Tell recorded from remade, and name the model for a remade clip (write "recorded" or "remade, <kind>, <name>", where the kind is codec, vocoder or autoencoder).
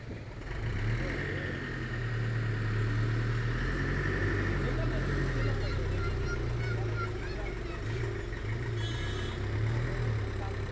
recorded